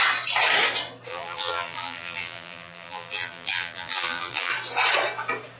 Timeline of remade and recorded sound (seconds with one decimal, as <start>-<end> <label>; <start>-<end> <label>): 0.0-1.1 recorded; 1.1-4.5 remade; 4.5-5.6 recorded